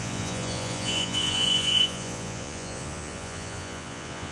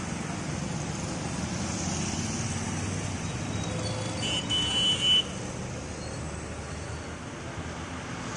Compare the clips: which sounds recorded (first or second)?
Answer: second